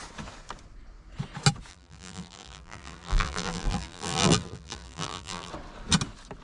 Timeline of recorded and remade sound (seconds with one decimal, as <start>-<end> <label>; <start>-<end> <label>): 0.0-1.7 recorded; 1.7-5.5 remade; 5.5-6.4 recorded